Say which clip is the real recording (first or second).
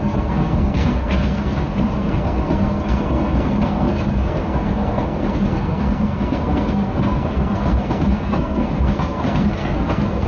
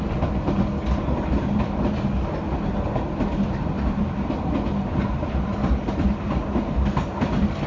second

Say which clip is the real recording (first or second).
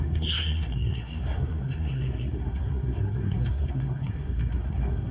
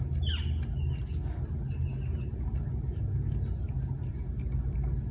second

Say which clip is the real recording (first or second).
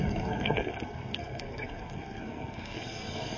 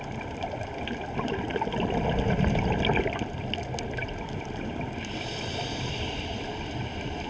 second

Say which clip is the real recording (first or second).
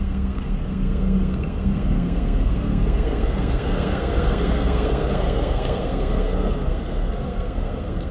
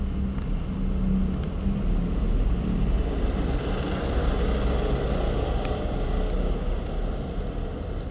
second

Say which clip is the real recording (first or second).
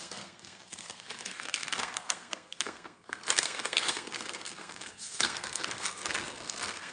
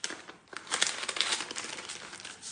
second